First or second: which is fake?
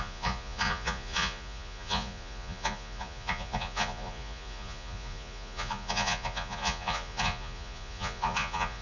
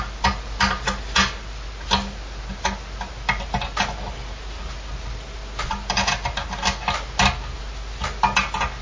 first